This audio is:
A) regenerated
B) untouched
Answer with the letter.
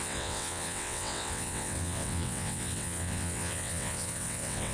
A